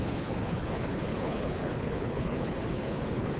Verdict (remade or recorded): remade